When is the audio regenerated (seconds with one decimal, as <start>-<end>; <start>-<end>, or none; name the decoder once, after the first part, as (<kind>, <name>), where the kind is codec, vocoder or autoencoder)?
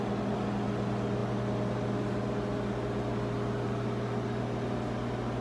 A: none